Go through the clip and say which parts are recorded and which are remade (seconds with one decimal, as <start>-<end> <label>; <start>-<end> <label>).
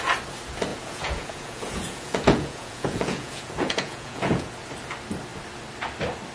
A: 0.0-0.7 recorded; 0.7-4.5 remade; 4.5-6.3 recorded